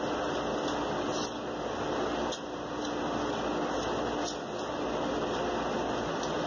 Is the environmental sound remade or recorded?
recorded